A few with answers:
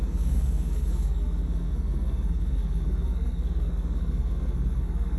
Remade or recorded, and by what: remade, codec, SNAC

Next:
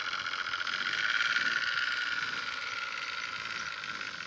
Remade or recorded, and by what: recorded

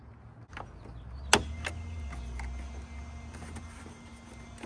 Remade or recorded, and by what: recorded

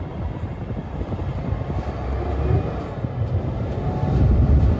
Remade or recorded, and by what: recorded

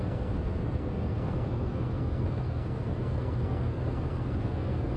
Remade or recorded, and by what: remade, codec, SNAC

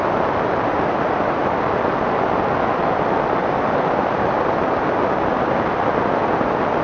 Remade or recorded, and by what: recorded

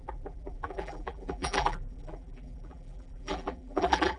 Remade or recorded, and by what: remade, vocoder, BigVGAN v2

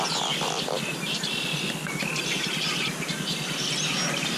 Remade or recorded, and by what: recorded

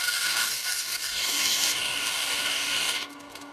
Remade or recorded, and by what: remade, codec, DAC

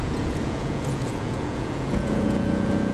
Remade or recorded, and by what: remade, vocoder, Vocos